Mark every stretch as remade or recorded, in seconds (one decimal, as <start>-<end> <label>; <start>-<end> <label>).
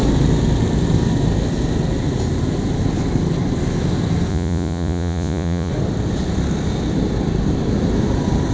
0.0-4.3 recorded; 4.3-5.7 remade; 5.7-8.5 recorded